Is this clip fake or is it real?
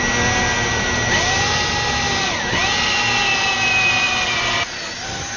real